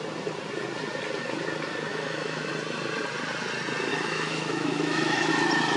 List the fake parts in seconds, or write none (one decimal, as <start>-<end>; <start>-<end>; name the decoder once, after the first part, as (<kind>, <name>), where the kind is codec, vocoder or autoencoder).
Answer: 1.9-2.5 (autoencoder, DAC-VAE); 3.9-5.3